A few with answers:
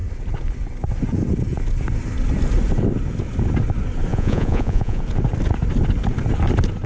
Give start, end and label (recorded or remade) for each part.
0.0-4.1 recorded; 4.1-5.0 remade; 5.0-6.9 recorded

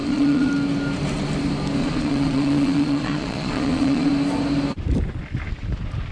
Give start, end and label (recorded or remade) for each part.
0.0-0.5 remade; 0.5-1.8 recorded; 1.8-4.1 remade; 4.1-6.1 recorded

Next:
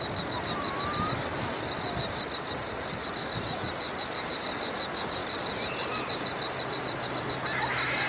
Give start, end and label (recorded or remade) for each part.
0.0-8.1 recorded